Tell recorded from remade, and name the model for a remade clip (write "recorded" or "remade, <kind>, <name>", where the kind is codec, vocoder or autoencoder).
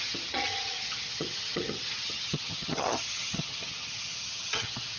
remade, vocoder, HiFi-GAN